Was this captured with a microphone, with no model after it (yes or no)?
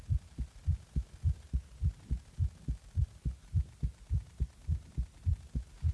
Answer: yes